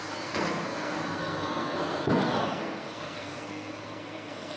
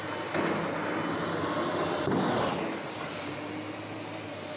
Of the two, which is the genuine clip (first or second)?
second